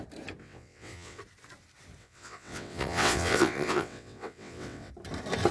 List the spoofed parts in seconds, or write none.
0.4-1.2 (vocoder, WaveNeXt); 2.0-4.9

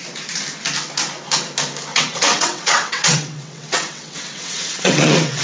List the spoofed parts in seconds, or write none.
1.9-5.4 (vocoder, WaveNeXt)

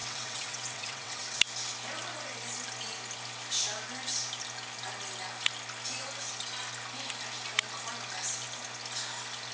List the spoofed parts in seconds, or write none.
0.0-1.4 (vocoder, WaveNeXt)

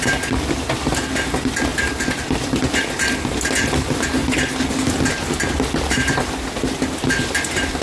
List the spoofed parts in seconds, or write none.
none

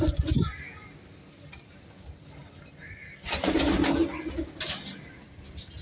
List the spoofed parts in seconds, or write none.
none

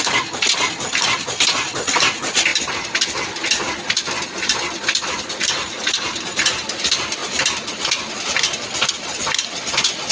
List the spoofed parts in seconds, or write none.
none